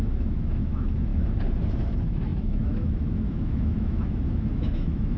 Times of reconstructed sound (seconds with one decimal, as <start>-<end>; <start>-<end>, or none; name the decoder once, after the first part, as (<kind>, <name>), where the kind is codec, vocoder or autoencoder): 0.0-1.1 (autoencoder, DAC-VAE); 1.7-5.2